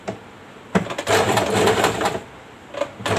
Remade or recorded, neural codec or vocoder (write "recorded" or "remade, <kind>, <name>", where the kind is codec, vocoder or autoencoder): remade, vocoder, BigVGAN v2